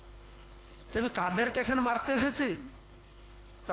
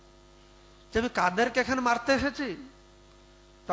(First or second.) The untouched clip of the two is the second